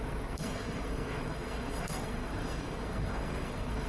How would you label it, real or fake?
fake